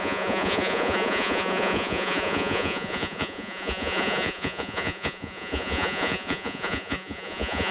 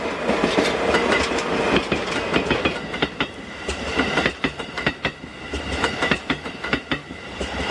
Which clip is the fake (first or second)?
first